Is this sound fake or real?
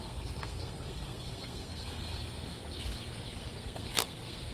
fake